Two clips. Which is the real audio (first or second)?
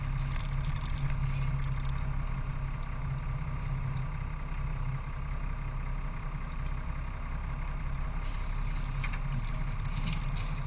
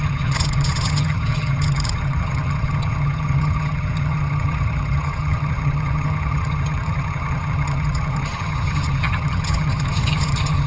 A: first